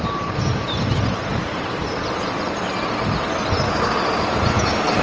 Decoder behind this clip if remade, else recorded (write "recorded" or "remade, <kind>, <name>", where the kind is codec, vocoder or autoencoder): recorded